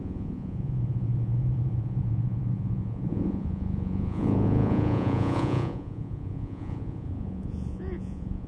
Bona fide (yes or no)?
no